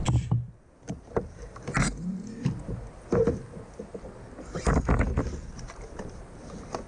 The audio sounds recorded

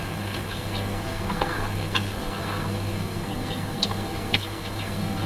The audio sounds remade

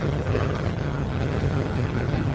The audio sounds remade